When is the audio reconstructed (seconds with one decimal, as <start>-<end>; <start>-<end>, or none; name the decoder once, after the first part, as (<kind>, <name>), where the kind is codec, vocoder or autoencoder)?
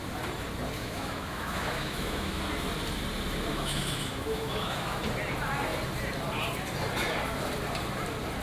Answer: 0.8-2.4 (autoencoder, DAC-VAE); 3.5-5.0